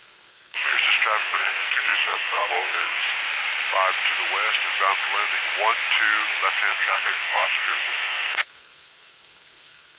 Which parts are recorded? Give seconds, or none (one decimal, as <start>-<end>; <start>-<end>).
0.7-1.2; 3.0-6.7